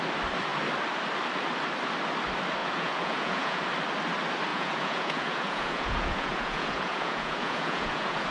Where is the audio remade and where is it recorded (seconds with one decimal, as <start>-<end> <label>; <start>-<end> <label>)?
0.0-2.6 recorded; 2.6-3.6 remade; 3.6-4.5 recorded; 4.5-8.3 remade